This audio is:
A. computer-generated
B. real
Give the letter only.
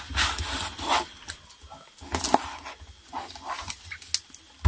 B